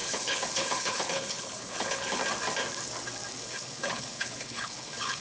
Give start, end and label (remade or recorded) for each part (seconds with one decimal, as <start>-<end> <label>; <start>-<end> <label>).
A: 0.0-2.2 remade; 2.2-3.4 recorded; 3.4-5.2 remade